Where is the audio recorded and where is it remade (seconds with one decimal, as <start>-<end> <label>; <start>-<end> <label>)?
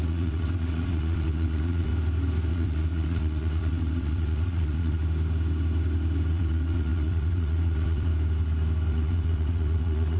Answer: 0.0-1.9 remade; 1.9-2.5 recorded; 2.5-5.0 remade; 5.0-6.3 recorded; 6.3-8.1 remade; 8.1-8.9 recorded; 8.9-10.2 remade